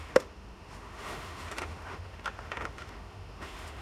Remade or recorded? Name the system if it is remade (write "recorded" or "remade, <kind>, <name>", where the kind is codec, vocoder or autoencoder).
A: remade, autoencoder, DAC-VAE